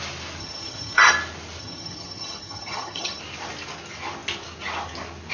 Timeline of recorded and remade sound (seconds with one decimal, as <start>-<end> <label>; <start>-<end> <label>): 0.0-0.4 recorded; 0.4-1.1 remade; 1.1-1.6 recorded; 1.6-3.2 remade; 3.2-5.3 recorded